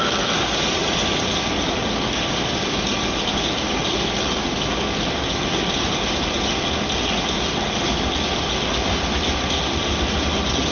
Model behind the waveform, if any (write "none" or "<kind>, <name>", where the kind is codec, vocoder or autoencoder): none